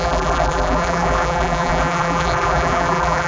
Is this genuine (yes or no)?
no